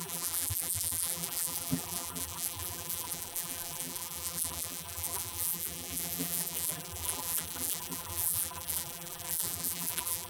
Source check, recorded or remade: remade